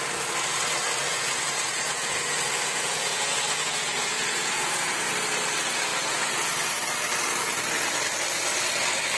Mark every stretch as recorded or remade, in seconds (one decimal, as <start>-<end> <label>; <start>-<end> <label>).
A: 0.0-1.1 recorded; 1.1-5.1 remade; 5.1-5.9 recorded; 5.9-6.5 remade; 6.5-9.2 recorded